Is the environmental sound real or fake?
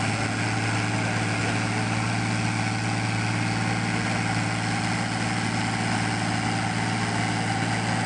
real